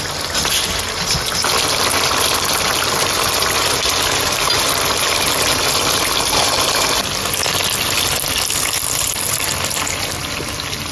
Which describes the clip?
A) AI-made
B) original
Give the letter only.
B